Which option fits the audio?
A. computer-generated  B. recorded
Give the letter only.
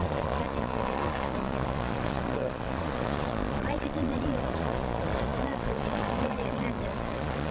A